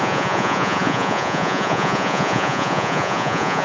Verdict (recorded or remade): remade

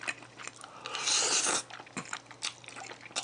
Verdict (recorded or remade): recorded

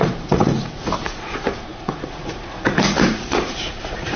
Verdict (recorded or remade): remade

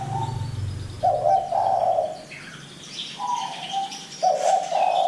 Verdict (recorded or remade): recorded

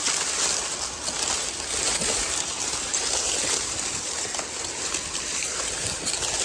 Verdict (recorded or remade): recorded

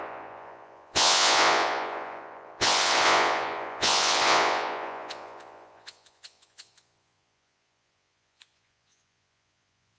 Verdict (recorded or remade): remade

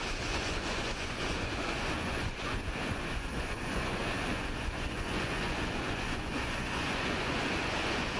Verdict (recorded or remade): remade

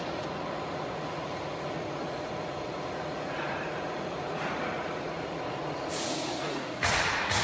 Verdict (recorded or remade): remade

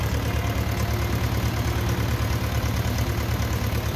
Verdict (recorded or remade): recorded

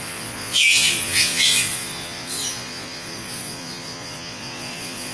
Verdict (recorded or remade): remade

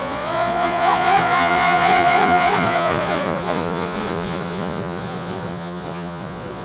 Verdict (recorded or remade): remade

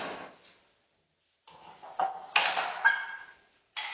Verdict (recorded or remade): recorded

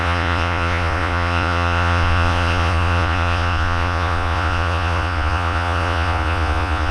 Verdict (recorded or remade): remade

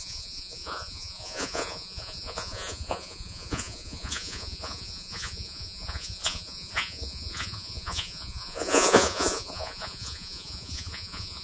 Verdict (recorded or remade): remade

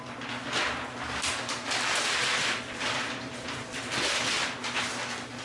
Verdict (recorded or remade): recorded